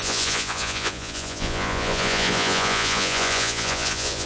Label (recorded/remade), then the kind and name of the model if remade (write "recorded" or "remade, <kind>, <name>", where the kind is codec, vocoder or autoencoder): remade, vocoder, Vocos